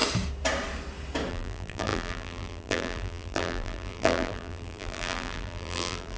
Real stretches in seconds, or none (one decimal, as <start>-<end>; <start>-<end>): 0.0-1.3